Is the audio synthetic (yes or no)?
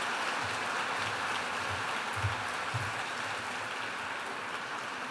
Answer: no